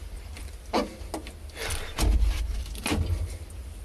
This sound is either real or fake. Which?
real